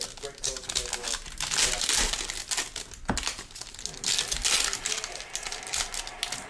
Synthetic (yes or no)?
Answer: no